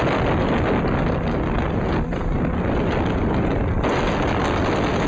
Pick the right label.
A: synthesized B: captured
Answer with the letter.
B